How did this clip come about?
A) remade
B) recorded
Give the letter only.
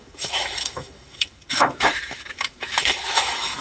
A